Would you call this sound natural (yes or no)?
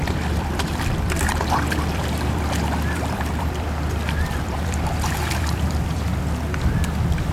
no